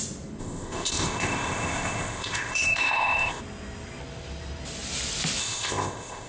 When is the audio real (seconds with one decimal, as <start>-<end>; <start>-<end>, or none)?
0.0-0.4; 3.4-5.4